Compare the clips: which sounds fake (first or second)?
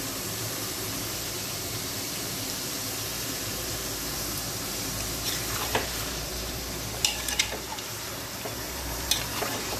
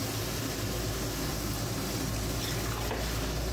first